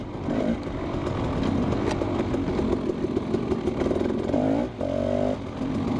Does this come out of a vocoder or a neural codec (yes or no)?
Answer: no